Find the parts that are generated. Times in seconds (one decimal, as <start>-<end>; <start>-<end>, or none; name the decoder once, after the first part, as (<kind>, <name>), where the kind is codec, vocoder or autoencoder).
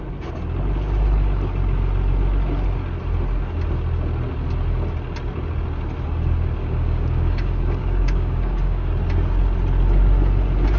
6.6-8.9 (codec, DAC)